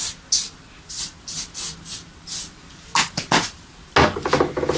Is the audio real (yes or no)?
yes